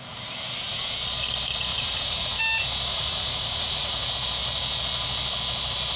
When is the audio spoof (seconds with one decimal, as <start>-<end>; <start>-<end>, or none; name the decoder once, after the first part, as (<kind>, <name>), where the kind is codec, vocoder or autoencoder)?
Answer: 1.7-2.4 (vocoder, Vocos); 2.9-4.1